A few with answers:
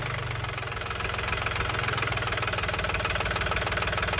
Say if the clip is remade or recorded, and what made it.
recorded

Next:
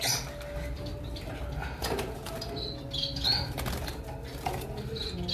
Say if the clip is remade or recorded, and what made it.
recorded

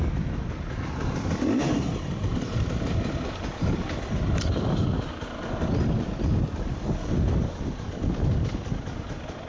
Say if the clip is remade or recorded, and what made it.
recorded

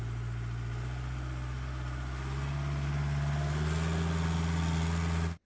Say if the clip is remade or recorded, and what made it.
recorded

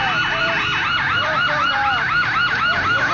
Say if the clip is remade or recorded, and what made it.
remade, vocoder, BigVGAN v2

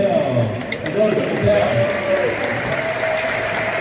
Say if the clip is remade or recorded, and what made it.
remade, vocoder, BigVGAN v2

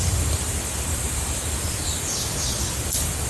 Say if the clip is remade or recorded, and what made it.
remade, vocoder, BigVGAN v2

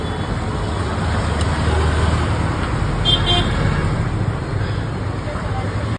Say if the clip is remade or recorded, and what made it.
recorded